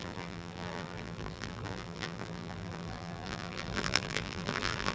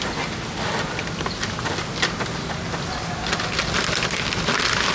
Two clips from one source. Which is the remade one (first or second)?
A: first